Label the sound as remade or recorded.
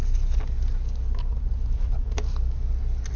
recorded